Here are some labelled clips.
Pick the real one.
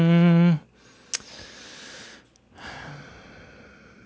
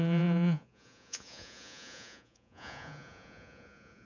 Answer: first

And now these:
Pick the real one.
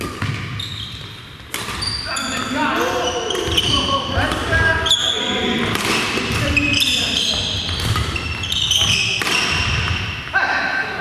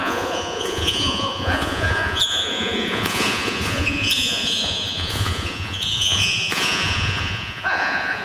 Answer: first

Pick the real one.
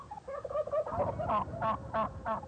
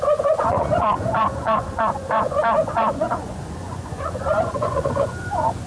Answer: first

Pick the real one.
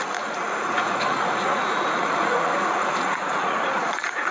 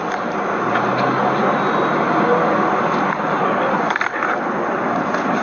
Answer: second